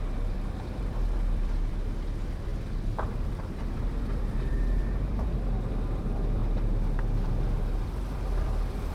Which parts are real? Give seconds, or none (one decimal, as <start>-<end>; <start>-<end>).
2.5-3.3; 6.4-7.3